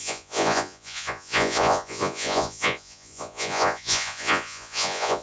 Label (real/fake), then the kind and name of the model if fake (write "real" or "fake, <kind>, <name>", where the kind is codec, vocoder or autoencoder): fake, vocoder, Vocos